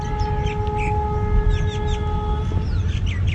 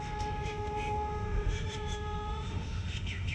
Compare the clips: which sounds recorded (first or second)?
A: first